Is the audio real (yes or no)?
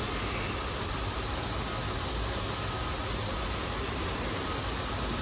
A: yes